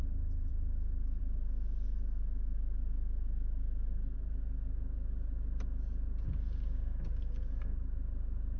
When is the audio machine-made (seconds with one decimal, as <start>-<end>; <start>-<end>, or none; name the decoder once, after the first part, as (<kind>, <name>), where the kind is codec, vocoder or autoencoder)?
none